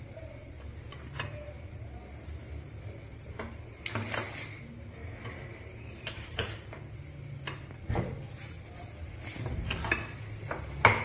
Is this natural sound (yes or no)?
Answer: yes